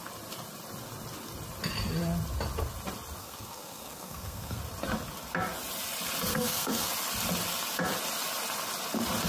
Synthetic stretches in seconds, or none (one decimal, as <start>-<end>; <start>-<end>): 3.2-4.6; 6.3-6.9

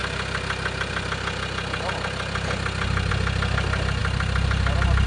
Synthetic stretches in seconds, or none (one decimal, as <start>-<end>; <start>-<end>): none

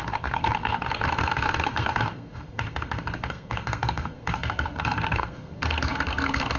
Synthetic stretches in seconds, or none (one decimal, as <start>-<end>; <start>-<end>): 0.0-6.6